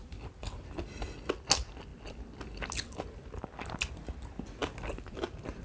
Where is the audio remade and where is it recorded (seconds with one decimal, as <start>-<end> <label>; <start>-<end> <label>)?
0.0-5.6 recorded